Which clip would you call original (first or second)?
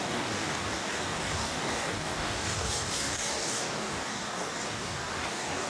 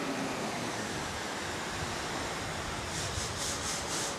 second